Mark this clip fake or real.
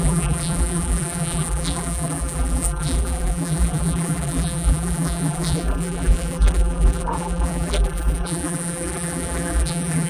fake